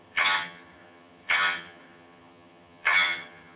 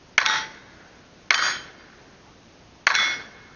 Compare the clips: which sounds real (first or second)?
second